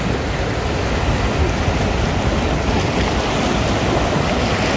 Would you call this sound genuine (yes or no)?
yes